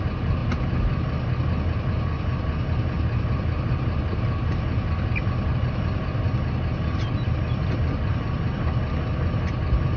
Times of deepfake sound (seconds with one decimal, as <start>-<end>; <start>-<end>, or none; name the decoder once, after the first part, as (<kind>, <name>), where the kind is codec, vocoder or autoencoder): none